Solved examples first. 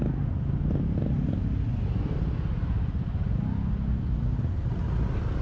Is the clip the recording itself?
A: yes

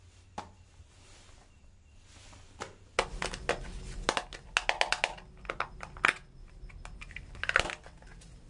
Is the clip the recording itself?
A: yes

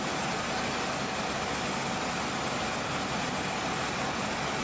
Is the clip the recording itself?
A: yes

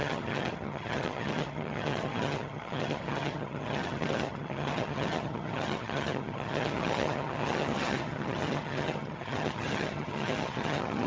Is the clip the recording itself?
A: no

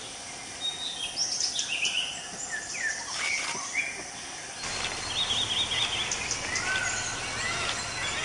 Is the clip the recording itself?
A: yes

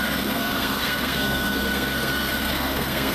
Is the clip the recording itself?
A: no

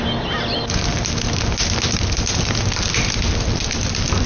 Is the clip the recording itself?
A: yes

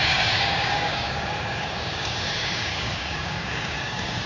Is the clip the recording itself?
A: no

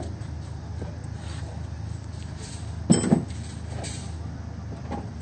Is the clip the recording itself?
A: yes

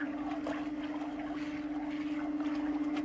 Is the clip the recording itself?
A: yes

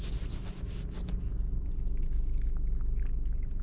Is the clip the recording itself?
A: yes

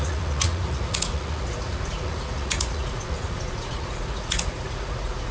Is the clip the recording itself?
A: no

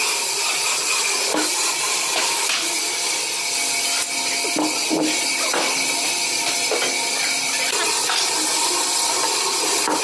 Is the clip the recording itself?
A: yes